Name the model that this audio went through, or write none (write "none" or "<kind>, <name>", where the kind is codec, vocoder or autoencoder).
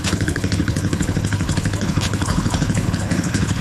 codec, HILCodec